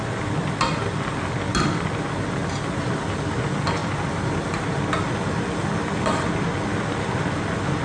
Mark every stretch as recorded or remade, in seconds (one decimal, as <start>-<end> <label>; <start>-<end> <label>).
0.0-7.8 recorded